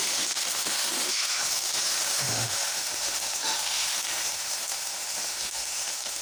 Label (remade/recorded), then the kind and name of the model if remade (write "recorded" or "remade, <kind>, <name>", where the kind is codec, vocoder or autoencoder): remade, autoencoder, DAC-VAE